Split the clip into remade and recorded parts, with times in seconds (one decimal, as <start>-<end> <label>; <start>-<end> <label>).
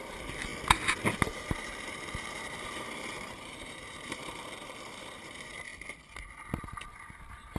0.0-0.5 remade; 0.5-1.3 recorded; 1.3-5.7 remade; 5.7-6.8 recorded; 6.8-7.6 remade